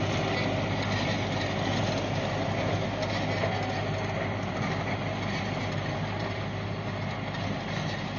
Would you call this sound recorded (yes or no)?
yes